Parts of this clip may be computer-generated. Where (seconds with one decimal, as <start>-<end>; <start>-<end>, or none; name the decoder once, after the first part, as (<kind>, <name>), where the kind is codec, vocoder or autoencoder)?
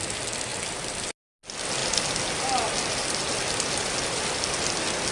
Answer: none